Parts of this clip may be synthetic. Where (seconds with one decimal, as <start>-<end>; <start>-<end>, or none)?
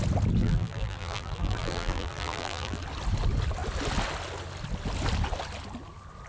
0.4-2.8